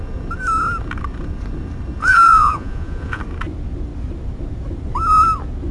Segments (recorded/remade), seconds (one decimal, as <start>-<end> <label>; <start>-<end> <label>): 0.0-2.0 recorded; 2.0-3.2 remade; 3.2-5.7 recorded